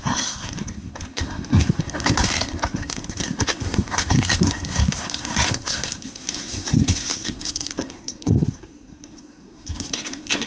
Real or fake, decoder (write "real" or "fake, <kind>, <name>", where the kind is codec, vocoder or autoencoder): fake, codec, SNAC